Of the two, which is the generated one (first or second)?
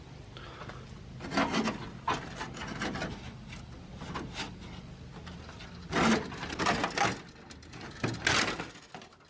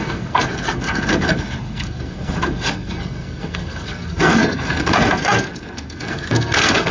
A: second